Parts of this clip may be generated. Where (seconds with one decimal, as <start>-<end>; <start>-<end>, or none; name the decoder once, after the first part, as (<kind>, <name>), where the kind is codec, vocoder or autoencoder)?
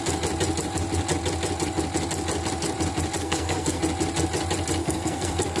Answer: 3.2-3.8 (codec, SNAC); 4.8-5.6